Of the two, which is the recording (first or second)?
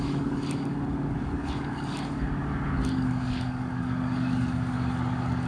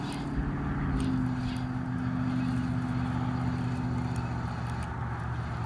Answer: second